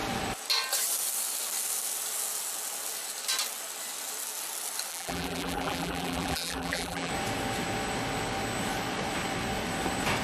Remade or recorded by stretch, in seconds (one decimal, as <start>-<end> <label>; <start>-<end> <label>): 0.0-4.9 recorded; 4.9-7.1 remade; 7.1-10.2 recorded

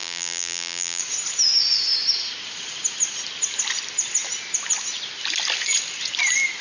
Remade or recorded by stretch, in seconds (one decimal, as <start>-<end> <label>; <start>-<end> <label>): 0.0-1.0 remade; 1.0-6.6 recorded

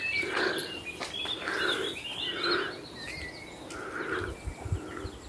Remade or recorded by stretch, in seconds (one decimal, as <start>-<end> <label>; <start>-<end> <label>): 0.0-2.1 remade; 2.1-5.3 recorded

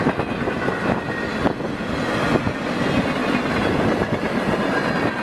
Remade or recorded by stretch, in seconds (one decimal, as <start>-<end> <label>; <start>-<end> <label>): 0.0-5.2 recorded

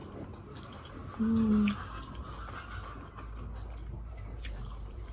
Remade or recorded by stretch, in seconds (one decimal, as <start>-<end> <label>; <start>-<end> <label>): 0.0-0.6 recorded; 0.6-1.0 remade; 1.0-4.1 recorded; 4.1-5.1 remade

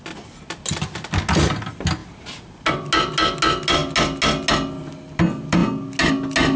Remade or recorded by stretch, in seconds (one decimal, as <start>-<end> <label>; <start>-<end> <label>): 0.0-6.6 recorded

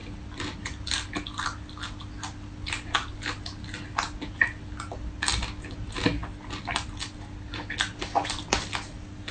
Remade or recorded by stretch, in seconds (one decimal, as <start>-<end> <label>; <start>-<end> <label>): 0.0-9.3 recorded